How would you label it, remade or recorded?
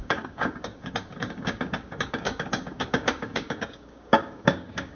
remade